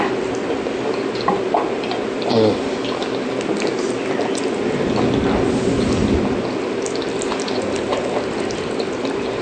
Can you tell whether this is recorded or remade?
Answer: recorded